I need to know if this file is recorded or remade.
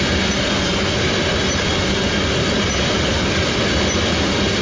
recorded